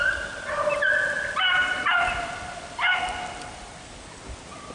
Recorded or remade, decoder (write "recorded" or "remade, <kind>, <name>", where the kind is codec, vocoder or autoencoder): recorded